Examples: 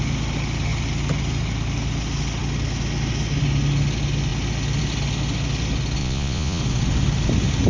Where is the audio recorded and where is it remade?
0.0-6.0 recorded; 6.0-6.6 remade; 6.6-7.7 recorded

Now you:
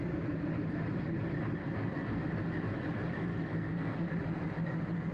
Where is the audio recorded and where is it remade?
0.0-1.6 recorded; 1.6-2.2 remade; 2.2-3.3 recorded; 3.3-4.1 remade; 4.1-5.1 recorded

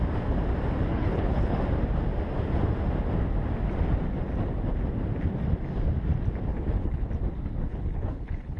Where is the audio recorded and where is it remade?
0.0-0.9 recorded; 0.9-1.6 remade; 1.6-6.5 recorded; 6.5-7.1 remade; 7.1-7.7 recorded; 7.7-8.6 remade

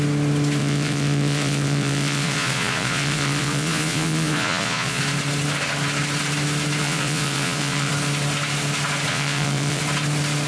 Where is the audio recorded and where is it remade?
0.0-0.6 recorded; 0.6-5.0 remade; 5.0-6.8 recorded; 6.8-7.9 remade; 7.9-9.1 recorded; 9.1-9.8 remade; 9.8-10.5 recorded

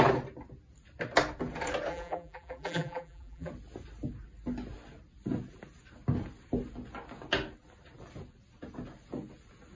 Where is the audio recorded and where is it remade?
0.0-1.9 recorded; 1.9-3.5 remade; 3.5-9.8 recorded

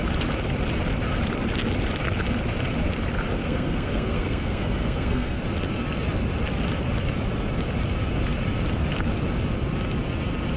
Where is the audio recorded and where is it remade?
0.0-3.4 recorded; 3.4-5.4 remade; 5.4-10.6 recorded

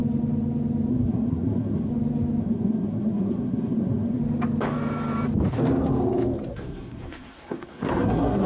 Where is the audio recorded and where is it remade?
0.0-0.9 recorded; 0.9-1.9 remade; 1.9-2.4 recorded; 2.4-4.2 remade; 4.2-6.5 recorded; 6.5-8.5 remade

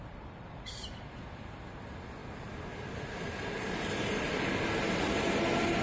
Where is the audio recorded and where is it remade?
0.0-5.8 recorded